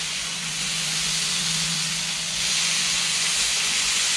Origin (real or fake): fake